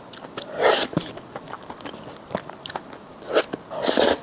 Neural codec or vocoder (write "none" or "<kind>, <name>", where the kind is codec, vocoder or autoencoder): none